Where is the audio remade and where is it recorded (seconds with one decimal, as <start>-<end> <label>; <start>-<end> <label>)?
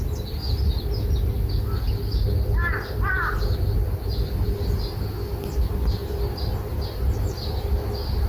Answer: 0.0-8.3 recorded